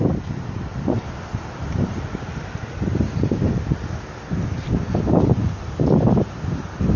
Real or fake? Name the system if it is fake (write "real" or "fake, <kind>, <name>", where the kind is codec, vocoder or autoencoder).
real